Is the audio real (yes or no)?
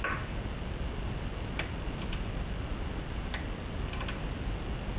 yes